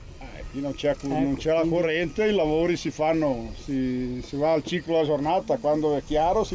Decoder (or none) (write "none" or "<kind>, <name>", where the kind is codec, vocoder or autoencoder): none